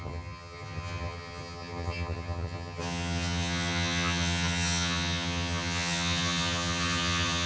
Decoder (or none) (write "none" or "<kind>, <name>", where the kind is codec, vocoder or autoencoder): vocoder, HiFi-GAN